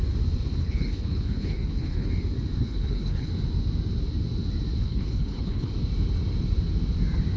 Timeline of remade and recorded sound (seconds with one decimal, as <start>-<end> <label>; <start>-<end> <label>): 0.0-0.6 recorded; 0.6-2.1 remade; 2.1-2.6 recorded; 2.6-3.3 remade; 3.3-4.8 recorded; 4.8-5.7 remade; 5.7-7.4 recorded